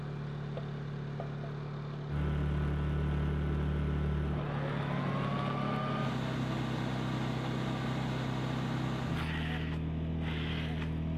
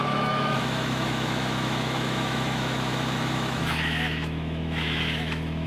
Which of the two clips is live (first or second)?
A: first